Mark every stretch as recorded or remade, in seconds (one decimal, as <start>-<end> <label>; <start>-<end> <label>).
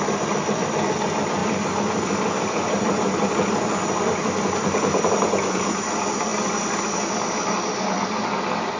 0.0-8.8 recorded